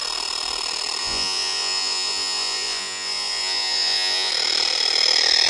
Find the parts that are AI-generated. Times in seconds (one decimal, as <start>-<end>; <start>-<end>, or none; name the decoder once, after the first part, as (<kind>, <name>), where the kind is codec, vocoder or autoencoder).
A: 1.0-4.3 (vocoder, Vocos)